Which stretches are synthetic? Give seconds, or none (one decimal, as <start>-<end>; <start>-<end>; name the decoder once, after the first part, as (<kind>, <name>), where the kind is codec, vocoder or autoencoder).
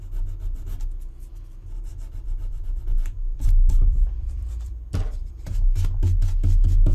1.9-5.3 (vocoder, BigVGAN v2)